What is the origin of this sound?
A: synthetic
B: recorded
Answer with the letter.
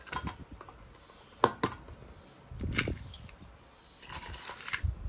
B